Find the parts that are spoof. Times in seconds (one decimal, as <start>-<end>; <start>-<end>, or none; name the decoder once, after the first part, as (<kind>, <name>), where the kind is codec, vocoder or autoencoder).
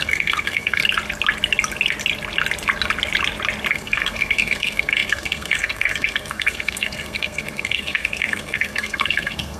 0.0-0.8 (codec, SNAC); 3.7-9.6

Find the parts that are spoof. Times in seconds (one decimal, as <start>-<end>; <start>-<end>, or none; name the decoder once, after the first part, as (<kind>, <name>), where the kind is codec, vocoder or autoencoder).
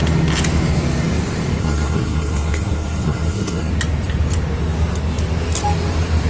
1.6-3.7 (codec, SNAC)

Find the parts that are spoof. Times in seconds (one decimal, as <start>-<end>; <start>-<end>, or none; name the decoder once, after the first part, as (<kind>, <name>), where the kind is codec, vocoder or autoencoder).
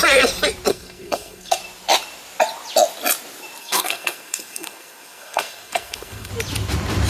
0.7-1.6 (codec, SNAC); 3.6-6.3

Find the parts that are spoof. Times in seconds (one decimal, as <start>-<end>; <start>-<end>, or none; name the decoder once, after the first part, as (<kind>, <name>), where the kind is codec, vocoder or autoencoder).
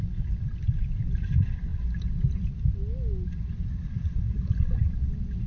none